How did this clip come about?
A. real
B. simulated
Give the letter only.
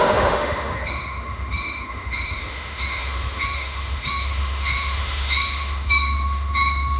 B